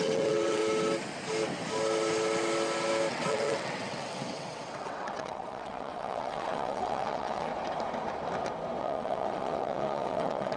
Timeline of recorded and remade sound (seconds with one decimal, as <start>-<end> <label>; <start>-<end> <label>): 0.0-0.6 remade; 0.6-3.1 recorded; 3.1-7.5 remade; 7.5-8.8 recorded; 8.8-10.6 remade